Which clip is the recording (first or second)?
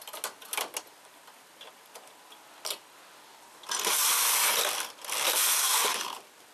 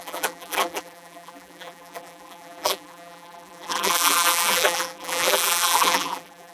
first